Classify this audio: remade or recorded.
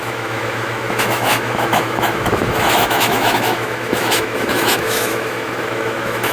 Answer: remade